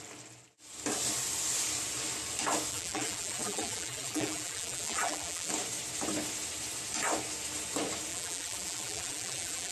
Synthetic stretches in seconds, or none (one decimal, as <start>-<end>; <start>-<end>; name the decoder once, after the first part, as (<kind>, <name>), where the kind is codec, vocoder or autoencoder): 2.7-5.5 (vocoder, BigVGAN v2); 8.1-9.7